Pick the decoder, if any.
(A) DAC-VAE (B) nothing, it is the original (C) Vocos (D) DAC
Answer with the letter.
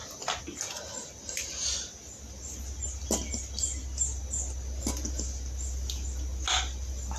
B